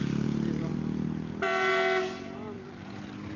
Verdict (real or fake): real